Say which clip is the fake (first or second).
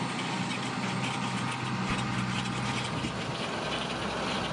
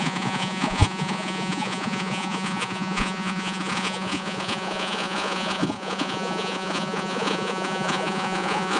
second